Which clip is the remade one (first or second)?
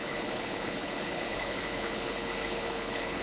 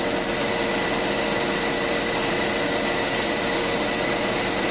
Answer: first